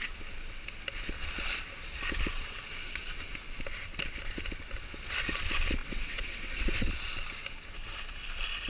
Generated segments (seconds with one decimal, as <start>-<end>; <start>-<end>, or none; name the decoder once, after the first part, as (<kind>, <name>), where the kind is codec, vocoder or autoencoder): 5.8-6.9 (vocoder, WaveNeXt)